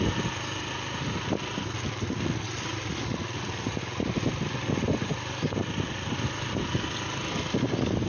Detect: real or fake real